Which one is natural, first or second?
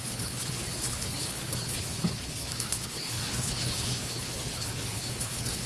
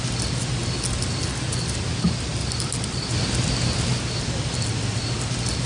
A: second